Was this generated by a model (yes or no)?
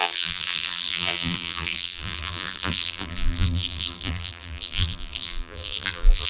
yes